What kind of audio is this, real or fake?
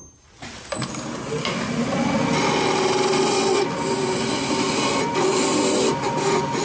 real